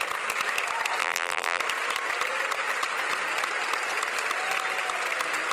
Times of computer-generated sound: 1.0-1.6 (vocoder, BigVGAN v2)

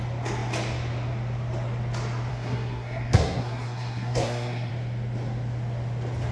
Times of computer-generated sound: 2.3-4.7 (codec, SNAC)

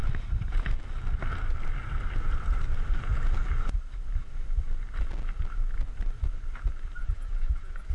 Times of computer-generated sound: 7.0-7.9 (autoencoder, DAC-VAE)

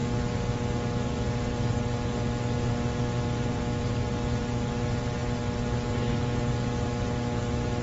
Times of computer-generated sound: none

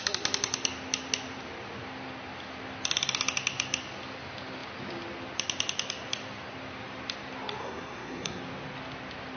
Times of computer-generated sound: 7.6-8.4 (codec, SNAC)